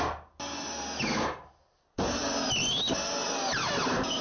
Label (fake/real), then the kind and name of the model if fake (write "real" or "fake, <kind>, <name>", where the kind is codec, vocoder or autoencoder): real